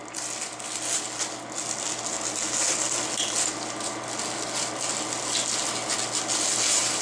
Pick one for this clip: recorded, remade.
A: recorded